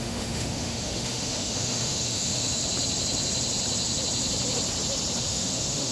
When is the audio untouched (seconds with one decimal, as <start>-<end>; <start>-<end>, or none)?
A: 2.6-5.2